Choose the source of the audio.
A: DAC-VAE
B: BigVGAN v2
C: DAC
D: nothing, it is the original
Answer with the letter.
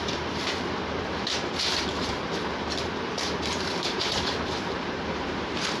B